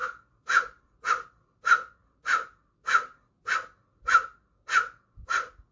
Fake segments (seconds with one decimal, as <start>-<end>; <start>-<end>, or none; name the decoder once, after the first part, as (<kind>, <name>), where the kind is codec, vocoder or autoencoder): none